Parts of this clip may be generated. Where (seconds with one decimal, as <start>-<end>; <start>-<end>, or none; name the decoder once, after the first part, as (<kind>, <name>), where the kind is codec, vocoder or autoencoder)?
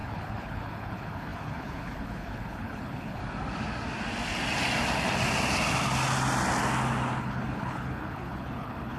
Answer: 0.0-3.2 (codec, HILCodec); 7.2-9.0